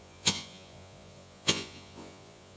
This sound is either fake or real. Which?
fake